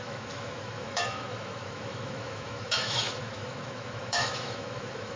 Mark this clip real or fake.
fake